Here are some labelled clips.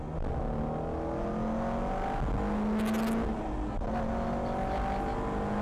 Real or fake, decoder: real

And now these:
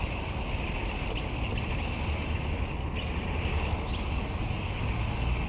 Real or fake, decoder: real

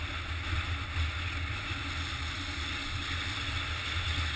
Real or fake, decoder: real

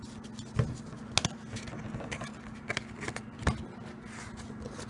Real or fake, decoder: real